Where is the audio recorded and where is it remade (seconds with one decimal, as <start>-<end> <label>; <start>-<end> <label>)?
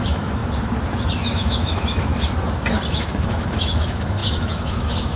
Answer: 0.0-0.4 remade; 0.4-1.2 recorded; 1.2-2.1 remade; 2.1-2.9 recorded; 2.9-5.2 remade